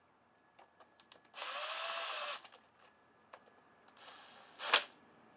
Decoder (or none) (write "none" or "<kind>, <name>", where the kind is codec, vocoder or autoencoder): none